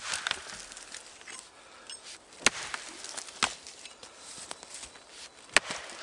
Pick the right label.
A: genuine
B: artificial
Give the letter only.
A